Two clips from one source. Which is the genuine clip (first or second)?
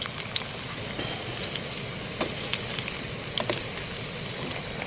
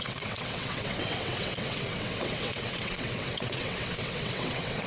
first